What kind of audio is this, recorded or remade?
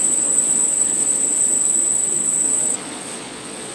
remade